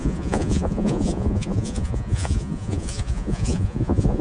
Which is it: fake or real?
fake